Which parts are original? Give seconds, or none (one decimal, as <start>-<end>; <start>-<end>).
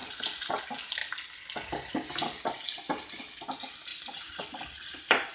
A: 0.6-3.9; 4.4-5.3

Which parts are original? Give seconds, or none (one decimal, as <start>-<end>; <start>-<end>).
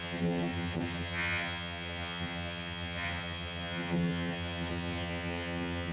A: none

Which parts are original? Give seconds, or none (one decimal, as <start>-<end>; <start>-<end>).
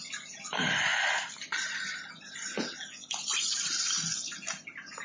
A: 0.0-5.0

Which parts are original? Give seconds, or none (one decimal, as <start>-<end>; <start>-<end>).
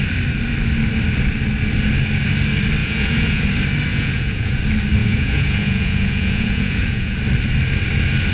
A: 0.0-2.8; 3.4-3.9; 4.6-5.0; 7.2-8.3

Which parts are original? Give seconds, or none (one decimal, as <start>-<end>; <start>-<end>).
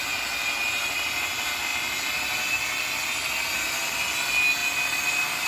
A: 0.0-5.5